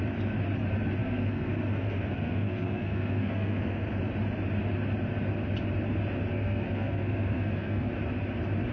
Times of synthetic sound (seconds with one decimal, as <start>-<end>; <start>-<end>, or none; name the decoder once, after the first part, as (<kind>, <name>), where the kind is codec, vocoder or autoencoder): 1.0-4.0 (codec, SNAC); 6.3-7.9